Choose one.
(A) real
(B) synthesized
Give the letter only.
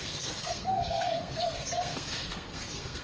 B